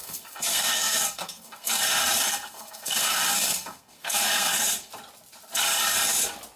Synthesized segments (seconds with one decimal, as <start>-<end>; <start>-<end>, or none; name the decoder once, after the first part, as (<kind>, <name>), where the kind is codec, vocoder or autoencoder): 0.0-4.9 (codec, SNAC)